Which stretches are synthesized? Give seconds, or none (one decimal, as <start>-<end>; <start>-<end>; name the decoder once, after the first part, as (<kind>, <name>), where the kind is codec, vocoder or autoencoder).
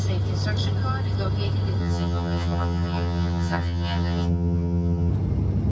1.8-5.1 (vocoder, HiFi-GAN)